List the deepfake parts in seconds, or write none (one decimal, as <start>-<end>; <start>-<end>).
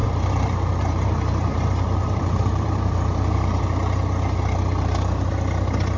0.0-3.6